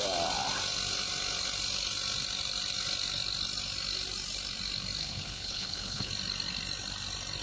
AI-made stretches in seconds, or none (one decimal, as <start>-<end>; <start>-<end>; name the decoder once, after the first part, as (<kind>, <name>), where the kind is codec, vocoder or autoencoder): 5.0-6.1 (codec, HILCodec)